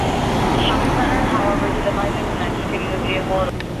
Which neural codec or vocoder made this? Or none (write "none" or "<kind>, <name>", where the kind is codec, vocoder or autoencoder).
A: none